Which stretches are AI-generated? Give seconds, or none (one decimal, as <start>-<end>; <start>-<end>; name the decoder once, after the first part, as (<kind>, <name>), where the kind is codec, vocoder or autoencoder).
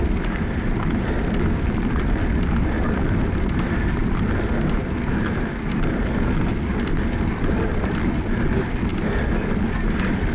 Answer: none